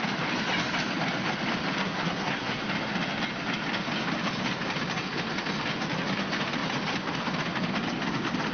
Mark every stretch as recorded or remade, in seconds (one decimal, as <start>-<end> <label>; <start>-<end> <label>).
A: 0.0-1.8 recorded; 1.8-2.6 remade; 2.6-8.5 recorded